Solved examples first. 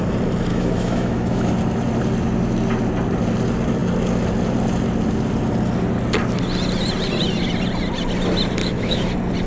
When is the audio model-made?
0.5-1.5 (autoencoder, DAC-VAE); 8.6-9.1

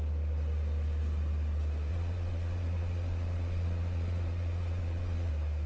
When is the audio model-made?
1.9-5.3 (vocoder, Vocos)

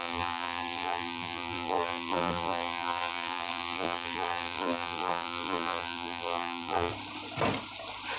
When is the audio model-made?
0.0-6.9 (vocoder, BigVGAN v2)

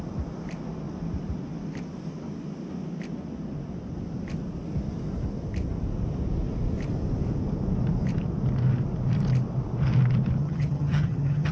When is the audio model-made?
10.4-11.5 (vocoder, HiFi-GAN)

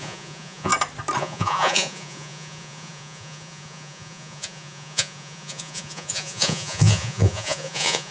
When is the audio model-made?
0.0-0.7 (vocoder, Vocos); 1.2-8.1

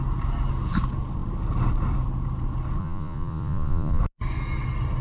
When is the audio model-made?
2.8-4.0 (vocoder, Vocos)

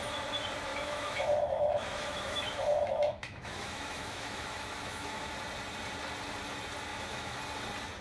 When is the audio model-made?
0.7-5.3 (autoencoder, DAC-VAE); 6.9-7.4

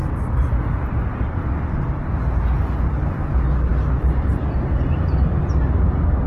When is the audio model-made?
none